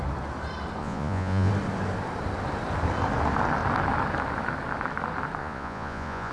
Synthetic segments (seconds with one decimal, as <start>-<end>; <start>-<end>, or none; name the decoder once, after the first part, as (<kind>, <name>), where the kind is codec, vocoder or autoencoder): 0.8-1.5 (vocoder, Vocos); 5.4-6.3